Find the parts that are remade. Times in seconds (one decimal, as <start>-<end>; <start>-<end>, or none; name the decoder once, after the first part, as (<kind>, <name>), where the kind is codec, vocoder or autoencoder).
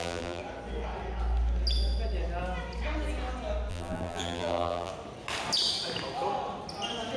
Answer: 0.0-0.4 (vocoder, BigVGAN v2); 3.7-4.9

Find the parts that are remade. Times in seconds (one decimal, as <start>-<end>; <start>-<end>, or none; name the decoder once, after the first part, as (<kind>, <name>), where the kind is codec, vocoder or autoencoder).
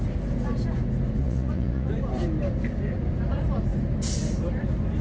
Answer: 1.2-1.9 (vocoder, Vocos)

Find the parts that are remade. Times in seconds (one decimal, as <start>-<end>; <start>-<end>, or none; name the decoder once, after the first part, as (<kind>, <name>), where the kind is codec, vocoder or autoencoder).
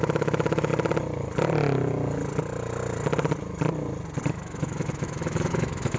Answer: 0.0-0.7 (autoencoder, DAC-VAE); 4.3-6.0